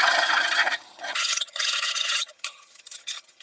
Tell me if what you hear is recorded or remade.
remade